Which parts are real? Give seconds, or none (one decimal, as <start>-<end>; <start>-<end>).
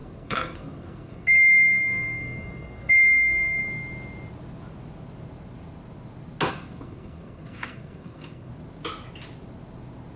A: 3.6-6.5; 8.5-10.2